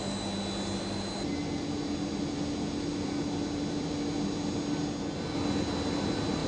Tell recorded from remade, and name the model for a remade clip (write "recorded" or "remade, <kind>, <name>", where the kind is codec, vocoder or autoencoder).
recorded